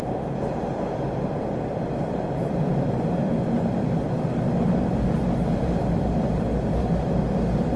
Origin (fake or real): fake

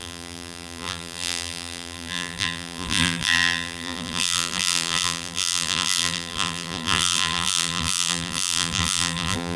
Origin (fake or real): fake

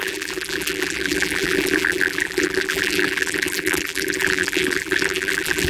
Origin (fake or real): fake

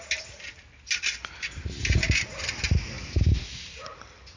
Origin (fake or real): real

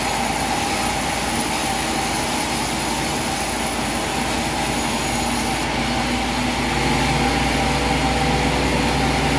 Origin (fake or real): real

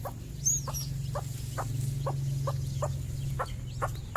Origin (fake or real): real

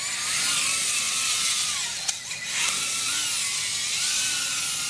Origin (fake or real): real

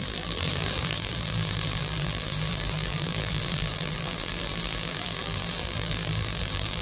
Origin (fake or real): fake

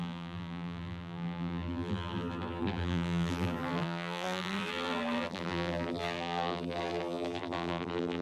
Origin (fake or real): fake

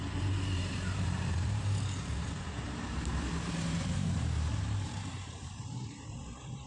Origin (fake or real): fake